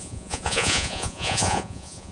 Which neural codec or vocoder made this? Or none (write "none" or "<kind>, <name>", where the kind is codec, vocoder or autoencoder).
vocoder, Vocos